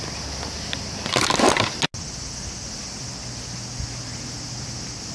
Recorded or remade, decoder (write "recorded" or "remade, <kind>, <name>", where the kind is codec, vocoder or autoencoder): recorded